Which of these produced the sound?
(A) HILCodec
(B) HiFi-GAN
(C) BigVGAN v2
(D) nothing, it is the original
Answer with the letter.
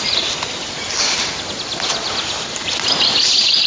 D